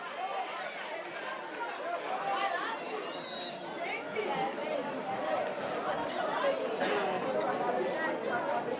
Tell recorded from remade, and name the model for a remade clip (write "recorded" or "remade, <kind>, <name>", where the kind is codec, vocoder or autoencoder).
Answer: recorded